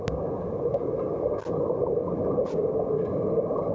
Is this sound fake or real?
real